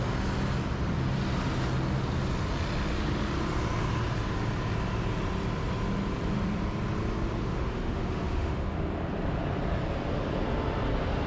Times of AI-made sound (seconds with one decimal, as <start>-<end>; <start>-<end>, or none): 7.4-8.8